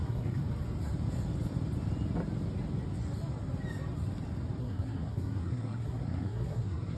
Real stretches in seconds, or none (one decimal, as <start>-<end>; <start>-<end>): 0.4-4.6